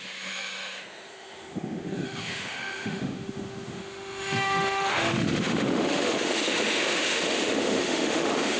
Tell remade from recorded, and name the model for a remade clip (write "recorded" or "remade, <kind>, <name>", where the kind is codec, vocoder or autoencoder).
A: remade, autoencoder, DAC-VAE